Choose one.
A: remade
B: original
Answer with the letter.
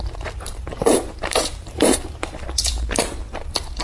A